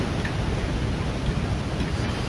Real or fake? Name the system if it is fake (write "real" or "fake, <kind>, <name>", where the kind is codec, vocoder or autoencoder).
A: real